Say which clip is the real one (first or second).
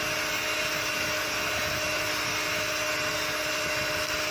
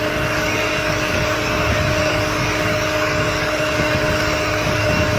first